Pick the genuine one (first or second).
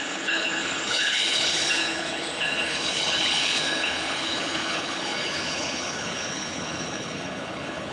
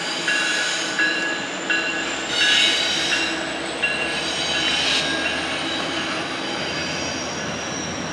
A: second